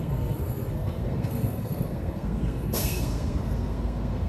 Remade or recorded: remade